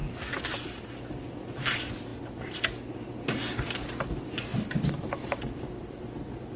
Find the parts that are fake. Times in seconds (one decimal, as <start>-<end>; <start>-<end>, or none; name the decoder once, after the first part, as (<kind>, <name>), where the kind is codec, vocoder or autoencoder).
4.5-6.0 (vocoder, BigVGAN v2)